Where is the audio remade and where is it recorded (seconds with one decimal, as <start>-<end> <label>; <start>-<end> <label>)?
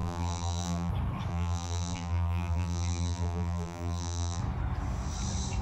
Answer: 0.0-0.9 remade; 0.9-1.3 recorded; 1.3-4.4 remade; 4.4-5.6 recorded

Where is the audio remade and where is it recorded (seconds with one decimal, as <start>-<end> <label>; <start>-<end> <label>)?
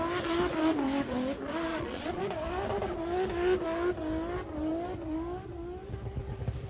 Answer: 0.0-1.7 recorded; 1.7-2.2 remade; 2.2-6.7 recorded